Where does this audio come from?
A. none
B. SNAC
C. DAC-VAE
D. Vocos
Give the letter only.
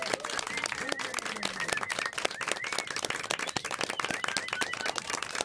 A